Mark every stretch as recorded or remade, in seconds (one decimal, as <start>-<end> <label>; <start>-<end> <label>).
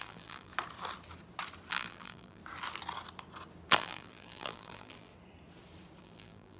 0.0-0.5 remade; 0.5-1.7 recorded; 1.7-2.4 remade; 2.4-3.7 recorded; 3.7-5.1 remade; 5.1-6.0 recorded; 6.0-6.6 remade